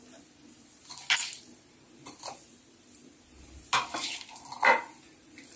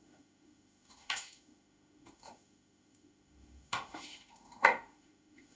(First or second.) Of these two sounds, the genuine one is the first